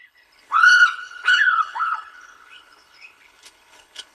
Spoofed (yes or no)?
yes